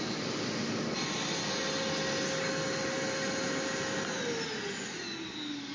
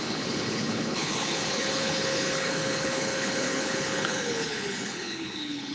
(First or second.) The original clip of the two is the first